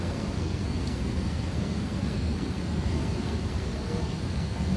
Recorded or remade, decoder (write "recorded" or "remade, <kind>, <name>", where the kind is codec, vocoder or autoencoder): remade, codec, SNAC